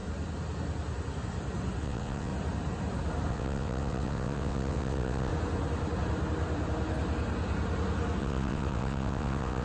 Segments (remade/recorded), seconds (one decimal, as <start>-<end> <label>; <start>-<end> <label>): 0.0-1.8 recorded; 1.8-2.3 remade; 2.3-3.3 recorded; 3.3-5.3 remade; 5.3-8.2 recorded; 8.2-9.6 remade